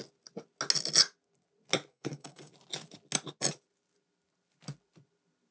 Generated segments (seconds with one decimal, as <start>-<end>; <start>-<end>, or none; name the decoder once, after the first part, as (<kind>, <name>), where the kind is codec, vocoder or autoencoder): 1.9-2.5 (codec, SNAC)